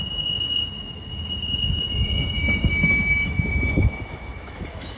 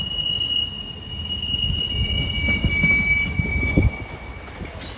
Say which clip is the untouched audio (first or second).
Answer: second